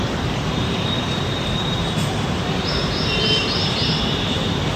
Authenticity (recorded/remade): remade